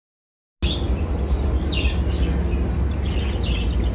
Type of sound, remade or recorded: recorded